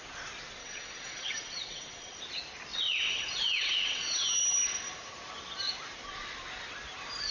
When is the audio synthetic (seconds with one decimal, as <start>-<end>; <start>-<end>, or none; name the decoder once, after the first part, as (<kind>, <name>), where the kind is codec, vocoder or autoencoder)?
0.6-2.2 (vocoder, WaveNeXt); 2.7-4.2